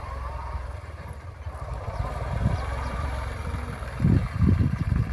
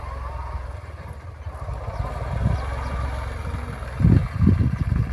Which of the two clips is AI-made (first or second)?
first